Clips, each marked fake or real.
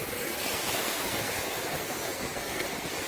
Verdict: fake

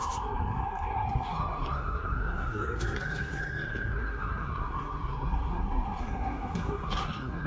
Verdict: fake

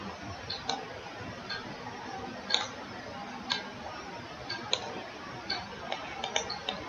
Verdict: real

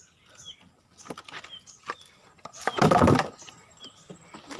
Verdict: real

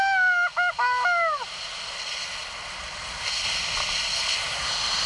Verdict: real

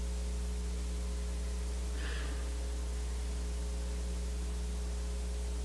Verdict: real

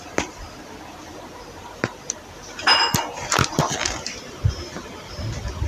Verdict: real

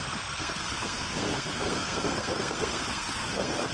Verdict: fake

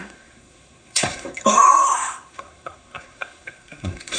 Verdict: fake